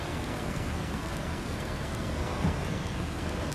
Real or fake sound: fake